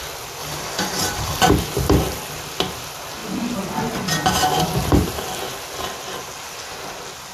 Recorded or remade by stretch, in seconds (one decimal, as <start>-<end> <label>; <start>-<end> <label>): 0.0-0.4 recorded; 0.4-1.5 remade; 1.5-7.3 recorded